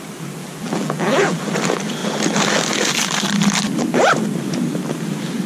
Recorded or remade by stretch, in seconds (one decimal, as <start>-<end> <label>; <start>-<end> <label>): 0.0-0.4 recorded; 0.4-1.5 remade; 1.5-5.5 recorded